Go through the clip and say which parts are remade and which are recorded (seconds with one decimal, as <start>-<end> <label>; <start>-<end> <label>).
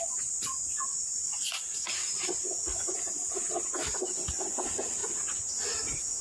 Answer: 0.0-6.2 recorded